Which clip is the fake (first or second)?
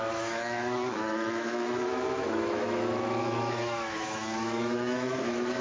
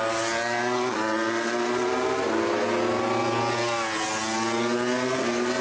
first